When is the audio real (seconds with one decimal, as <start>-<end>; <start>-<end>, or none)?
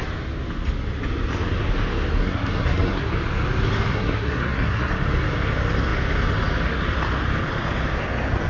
0.0-2.2; 3.1-3.9; 4.9-8.5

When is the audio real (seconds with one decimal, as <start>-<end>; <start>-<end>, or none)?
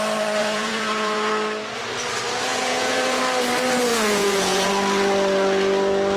0.0-0.4; 1.3-2.5; 3.2-3.9; 4.7-6.2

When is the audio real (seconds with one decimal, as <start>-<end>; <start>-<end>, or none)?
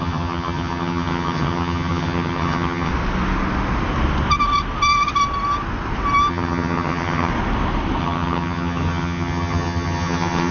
2.9-6.3; 7.3-8.0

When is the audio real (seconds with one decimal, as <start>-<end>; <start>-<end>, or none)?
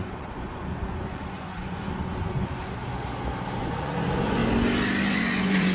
2.8-3.6; 4.4-5.1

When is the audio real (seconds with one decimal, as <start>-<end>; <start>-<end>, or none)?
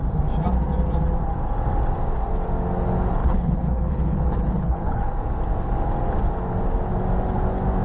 0.0-3.2; 5.1-7.8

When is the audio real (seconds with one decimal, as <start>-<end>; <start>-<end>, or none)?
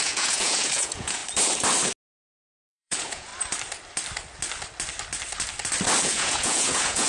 1.2-2.6; 3.3-6.0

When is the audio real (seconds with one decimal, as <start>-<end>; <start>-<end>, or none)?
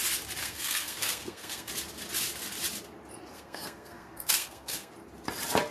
0.0-0.4; 1.7-3.3; 4.9-5.7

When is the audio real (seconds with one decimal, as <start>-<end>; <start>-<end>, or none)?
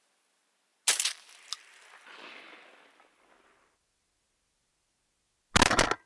0.0-6.1